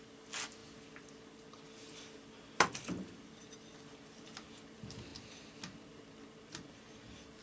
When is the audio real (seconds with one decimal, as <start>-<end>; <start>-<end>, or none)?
0.0-7.4